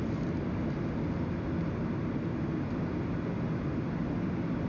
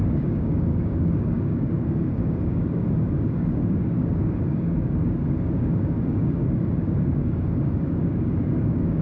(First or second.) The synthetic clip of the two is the second